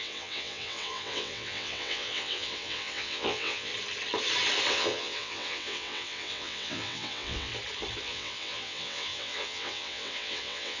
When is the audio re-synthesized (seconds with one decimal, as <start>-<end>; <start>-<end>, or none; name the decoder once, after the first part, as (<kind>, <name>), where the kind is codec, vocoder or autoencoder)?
0.0-3.7 (vocoder, WaveNeXt); 4.7-7.5; 8.0-10.8